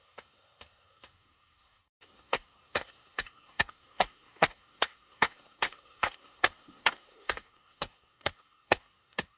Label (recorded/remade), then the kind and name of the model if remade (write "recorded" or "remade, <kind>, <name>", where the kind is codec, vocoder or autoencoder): remade, codec, SNAC